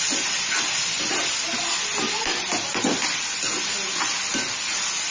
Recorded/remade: recorded